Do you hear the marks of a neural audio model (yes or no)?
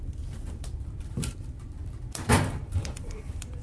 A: yes